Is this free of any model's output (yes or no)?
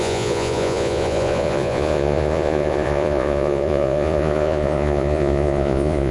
no